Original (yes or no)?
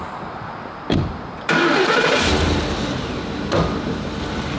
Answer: yes